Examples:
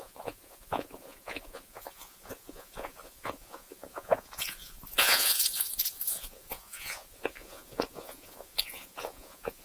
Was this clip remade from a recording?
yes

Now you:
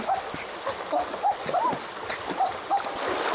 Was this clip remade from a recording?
no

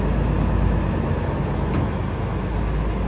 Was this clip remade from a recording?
no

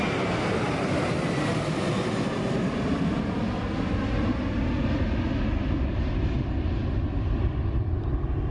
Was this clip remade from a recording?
no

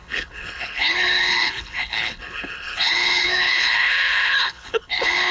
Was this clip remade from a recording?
yes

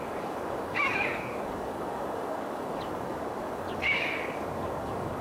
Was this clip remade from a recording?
yes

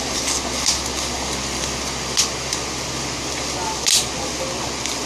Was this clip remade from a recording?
no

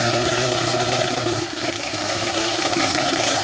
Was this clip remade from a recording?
yes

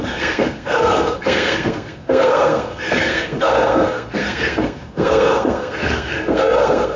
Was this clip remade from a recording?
yes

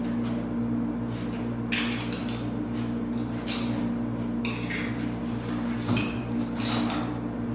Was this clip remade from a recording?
no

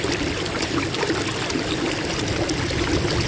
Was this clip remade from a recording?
no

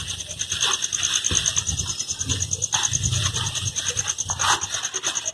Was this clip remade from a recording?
no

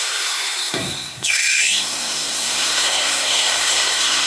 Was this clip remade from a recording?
yes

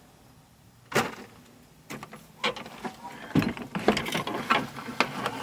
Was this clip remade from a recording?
no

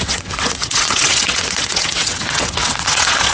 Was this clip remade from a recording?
yes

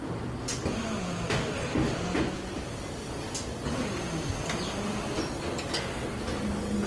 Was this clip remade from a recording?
no